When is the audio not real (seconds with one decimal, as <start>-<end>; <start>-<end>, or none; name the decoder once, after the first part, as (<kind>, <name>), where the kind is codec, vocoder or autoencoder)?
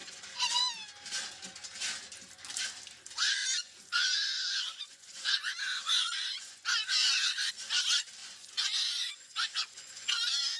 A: 0.0-0.6 (vocoder, Vocos); 3.4-7.5; 8.2-10.6